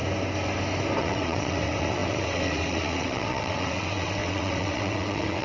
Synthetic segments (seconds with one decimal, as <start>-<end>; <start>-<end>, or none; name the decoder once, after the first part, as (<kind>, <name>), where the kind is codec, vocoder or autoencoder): 1.0-5.4 (vocoder, WaveNeXt)